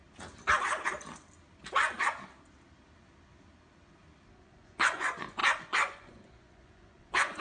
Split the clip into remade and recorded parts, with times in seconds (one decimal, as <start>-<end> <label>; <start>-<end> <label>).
0.0-4.4 recorded; 4.4-7.4 remade

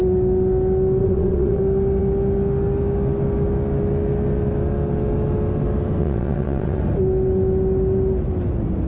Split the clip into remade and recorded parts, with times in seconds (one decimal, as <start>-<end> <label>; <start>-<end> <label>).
0.0-1.0 recorded; 1.0-1.6 remade; 1.6-6.0 recorded; 6.0-6.8 remade; 6.8-8.9 recorded

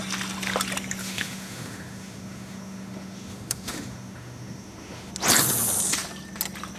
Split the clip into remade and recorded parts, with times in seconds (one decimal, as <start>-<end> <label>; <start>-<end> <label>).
0.0-1.0 recorded; 1.0-5.1 remade; 5.1-6.8 recorded

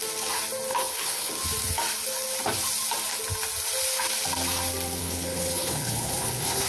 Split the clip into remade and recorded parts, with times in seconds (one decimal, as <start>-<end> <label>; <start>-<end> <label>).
0.0-0.7 recorded; 0.7-1.3 remade; 1.3-5.0 recorded; 5.0-6.7 remade

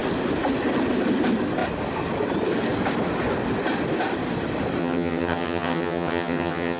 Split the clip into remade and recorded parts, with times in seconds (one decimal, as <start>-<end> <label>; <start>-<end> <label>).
0.0-4.8 recorded; 4.8-6.8 remade